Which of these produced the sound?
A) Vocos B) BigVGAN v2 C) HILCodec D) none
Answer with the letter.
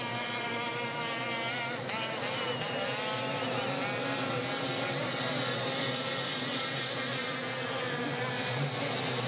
D